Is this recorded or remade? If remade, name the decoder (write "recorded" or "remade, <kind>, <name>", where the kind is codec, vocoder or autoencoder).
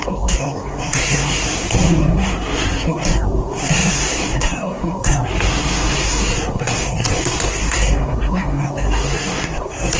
remade, codec, SNAC